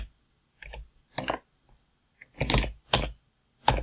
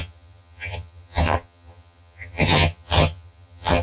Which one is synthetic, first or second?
second